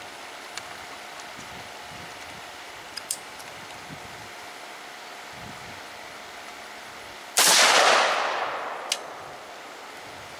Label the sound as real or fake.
real